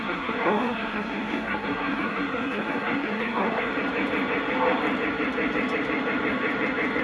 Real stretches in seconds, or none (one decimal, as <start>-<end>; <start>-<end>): 3.7-7.0